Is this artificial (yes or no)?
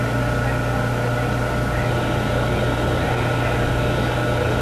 no